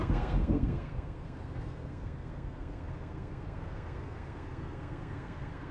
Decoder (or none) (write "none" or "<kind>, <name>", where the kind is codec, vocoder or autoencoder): codec, SNAC